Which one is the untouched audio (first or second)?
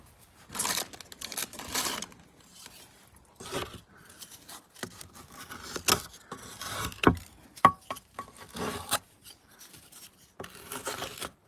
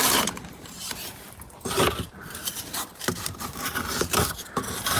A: first